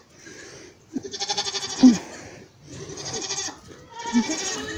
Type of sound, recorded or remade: recorded